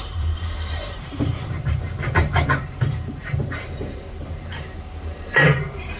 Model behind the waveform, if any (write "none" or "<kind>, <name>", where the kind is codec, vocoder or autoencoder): vocoder, BigVGAN v2